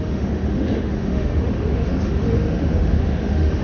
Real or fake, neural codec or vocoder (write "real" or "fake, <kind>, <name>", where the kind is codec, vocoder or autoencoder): fake, autoencoder, DAC-VAE